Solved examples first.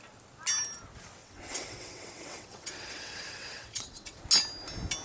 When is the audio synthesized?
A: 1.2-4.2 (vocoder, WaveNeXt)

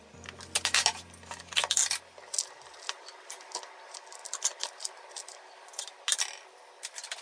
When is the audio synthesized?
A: none

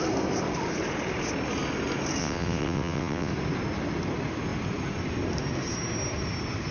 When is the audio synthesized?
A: 2.2-3.3 (vocoder, WaveNeXt)

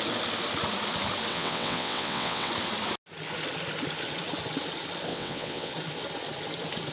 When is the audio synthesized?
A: 1.3-2.5 (vocoder, WaveNeXt); 5.1-5.7

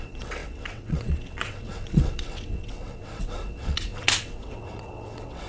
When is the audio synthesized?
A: 0.0-5.5 (vocoder, WaveNeXt)

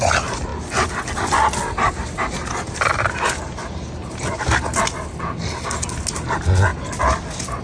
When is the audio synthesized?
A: none

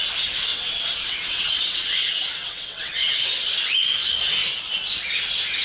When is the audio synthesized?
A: 0.5-3.3 (vocoder, WaveNeXt)

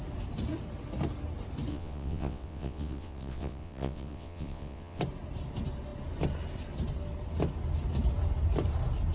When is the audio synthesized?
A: 1.7-5.0 (vocoder, WaveNeXt)